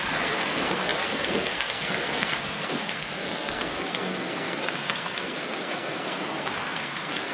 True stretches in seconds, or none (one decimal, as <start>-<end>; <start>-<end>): none